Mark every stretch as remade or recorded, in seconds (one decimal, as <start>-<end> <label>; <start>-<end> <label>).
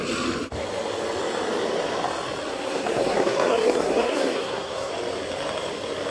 0.0-2.5 recorded; 2.5-4.9 remade; 4.9-6.1 recorded